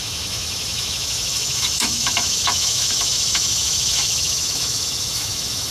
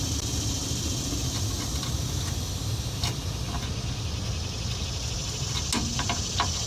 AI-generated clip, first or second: first